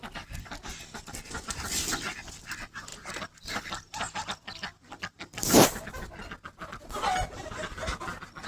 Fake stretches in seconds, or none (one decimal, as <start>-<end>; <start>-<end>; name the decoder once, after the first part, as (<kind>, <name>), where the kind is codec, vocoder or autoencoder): 2.9-6.1 (vocoder, BigVGAN v2)